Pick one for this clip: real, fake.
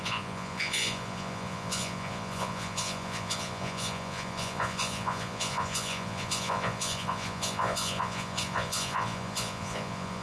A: fake